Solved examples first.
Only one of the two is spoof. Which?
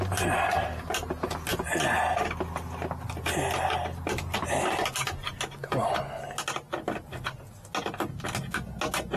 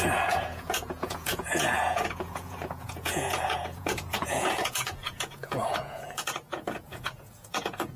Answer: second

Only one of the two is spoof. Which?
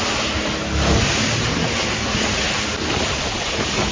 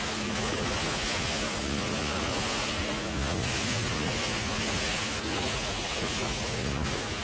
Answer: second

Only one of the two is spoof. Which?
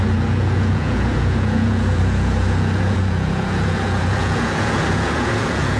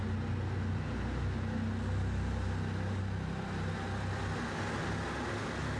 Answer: first